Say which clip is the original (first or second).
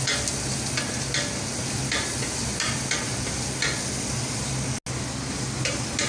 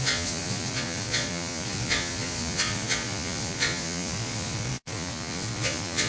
first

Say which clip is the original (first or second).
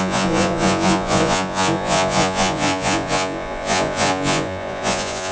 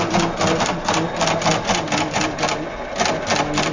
second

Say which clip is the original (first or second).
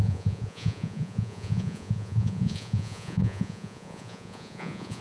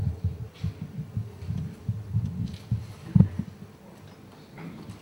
second